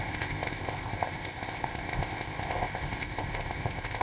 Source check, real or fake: fake